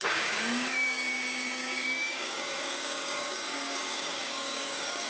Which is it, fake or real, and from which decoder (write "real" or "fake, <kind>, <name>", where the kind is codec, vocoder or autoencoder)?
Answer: fake, codec, DAC